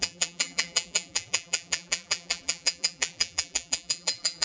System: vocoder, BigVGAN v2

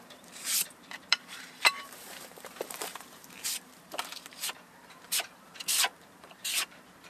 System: vocoder, BigVGAN v2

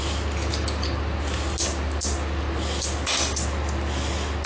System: none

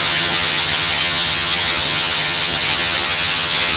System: vocoder, HiFi-GAN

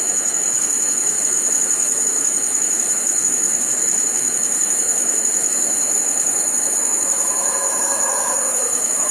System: autoencoder, DAC-VAE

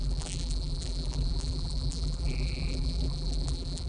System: vocoder, BigVGAN v2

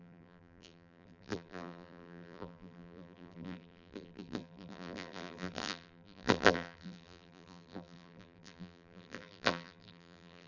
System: vocoder, BigVGAN v2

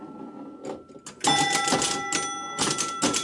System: none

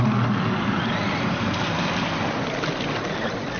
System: none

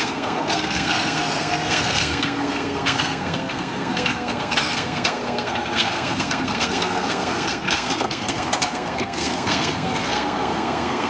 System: codec, SNAC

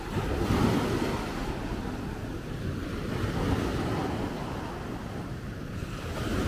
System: none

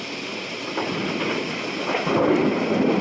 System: none